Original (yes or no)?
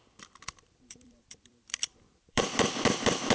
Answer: no